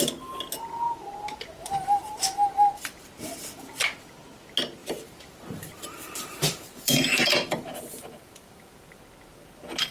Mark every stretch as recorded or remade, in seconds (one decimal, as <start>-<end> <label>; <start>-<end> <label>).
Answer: 0.0-4.8 recorded; 4.8-9.0 remade; 9.0-9.9 recorded